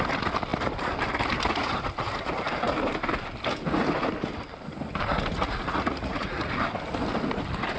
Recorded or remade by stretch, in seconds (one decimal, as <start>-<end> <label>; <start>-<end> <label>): 0.0-5.3 recorded; 5.3-6.5 remade; 6.5-7.8 recorded